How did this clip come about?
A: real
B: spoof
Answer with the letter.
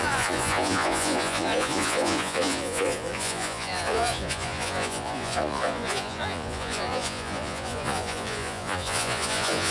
B